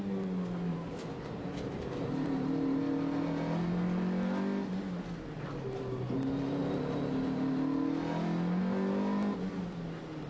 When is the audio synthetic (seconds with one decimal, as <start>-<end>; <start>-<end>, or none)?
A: 0.7-2.5